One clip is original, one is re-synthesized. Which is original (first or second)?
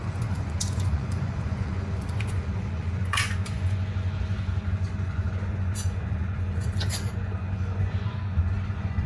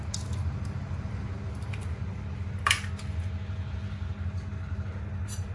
second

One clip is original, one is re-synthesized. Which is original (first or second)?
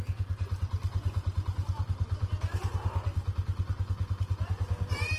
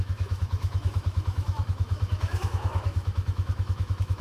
first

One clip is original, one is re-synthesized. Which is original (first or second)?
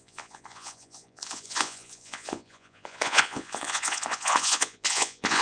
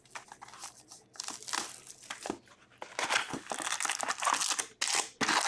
second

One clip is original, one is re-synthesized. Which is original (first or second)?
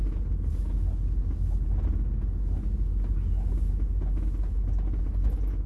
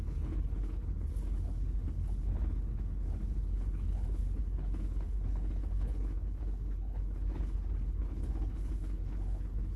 first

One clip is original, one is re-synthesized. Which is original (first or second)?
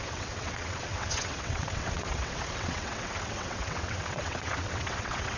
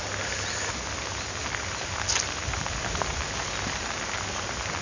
second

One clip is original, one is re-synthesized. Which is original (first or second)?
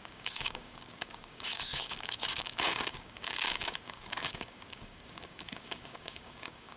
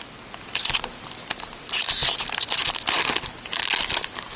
second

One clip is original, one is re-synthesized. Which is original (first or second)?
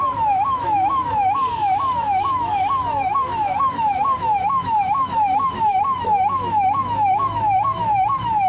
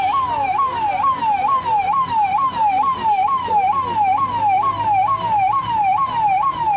second